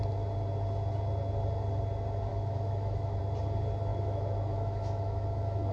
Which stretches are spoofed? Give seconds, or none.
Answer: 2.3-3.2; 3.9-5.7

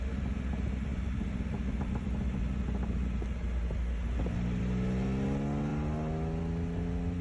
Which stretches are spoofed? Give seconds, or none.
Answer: none